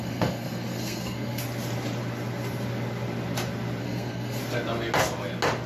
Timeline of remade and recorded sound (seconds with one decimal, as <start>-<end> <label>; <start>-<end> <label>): 0.0-1.4 remade; 1.4-3.8 recorded; 3.8-4.4 remade; 4.4-5.7 recorded